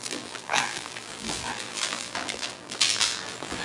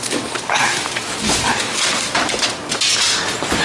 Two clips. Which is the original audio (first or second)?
second